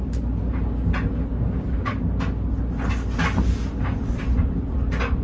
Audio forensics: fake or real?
real